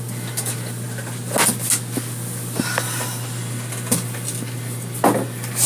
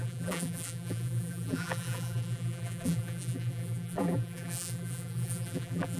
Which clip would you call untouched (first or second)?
first